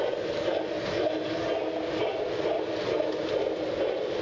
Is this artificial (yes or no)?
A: no